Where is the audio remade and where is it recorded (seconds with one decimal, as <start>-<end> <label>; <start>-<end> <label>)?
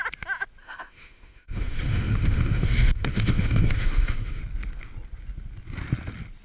0.0-0.6 recorded; 0.6-4.4 remade; 4.4-6.4 recorded